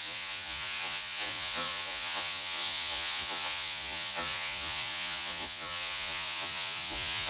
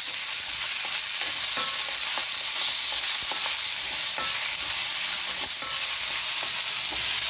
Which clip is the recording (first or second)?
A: second